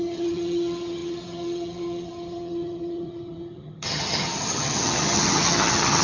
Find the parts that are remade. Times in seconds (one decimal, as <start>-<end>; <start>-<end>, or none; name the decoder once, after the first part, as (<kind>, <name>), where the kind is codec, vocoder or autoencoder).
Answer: 0.0-6.0 (vocoder, HiFi-GAN)